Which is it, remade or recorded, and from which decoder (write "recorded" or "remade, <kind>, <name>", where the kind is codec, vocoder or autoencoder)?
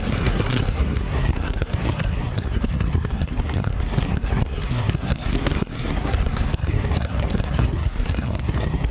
remade, codec, SNAC